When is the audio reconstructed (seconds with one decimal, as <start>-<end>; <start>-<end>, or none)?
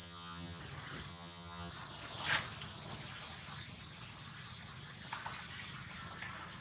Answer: 0.0-0.6; 1.1-1.7